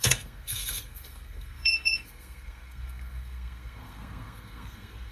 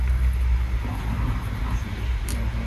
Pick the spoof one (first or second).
first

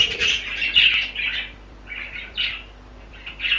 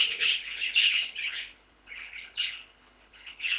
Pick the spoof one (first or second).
second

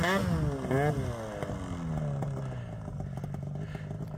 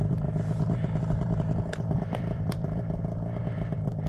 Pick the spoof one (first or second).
second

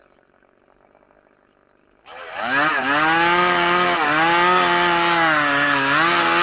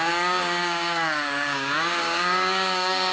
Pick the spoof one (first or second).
second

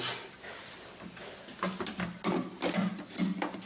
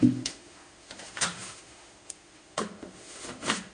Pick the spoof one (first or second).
second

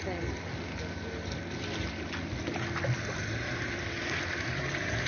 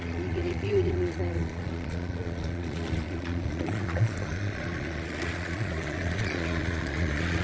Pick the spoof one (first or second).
second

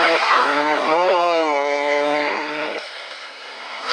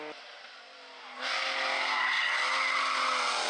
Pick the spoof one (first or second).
first